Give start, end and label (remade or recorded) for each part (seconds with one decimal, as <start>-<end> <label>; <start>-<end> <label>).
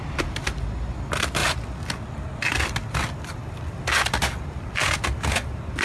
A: 0.0-5.8 recorded